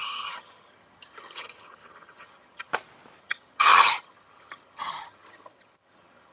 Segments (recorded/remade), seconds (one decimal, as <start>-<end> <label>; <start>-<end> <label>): 0.0-2.7 remade; 2.7-3.2 recorded; 3.2-6.3 remade